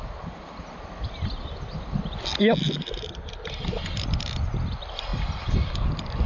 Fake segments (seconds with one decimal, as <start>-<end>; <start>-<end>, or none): none